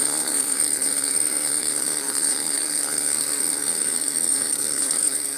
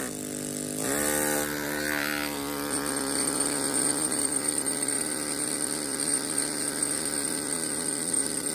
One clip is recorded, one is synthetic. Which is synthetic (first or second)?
first